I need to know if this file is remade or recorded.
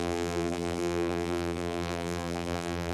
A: remade